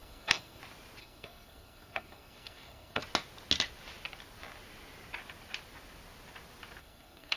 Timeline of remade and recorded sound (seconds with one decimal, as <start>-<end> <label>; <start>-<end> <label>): 0.0-0.6 remade; 0.6-1.0 recorded; 1.0-3.0 remade; 3.0-6.8 recorded; 6.8-7.4 remade